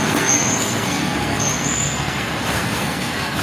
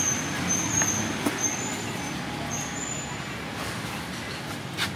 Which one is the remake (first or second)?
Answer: first